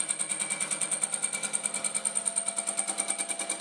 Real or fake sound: real